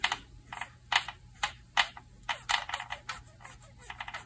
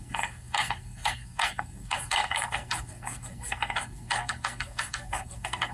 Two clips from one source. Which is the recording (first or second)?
first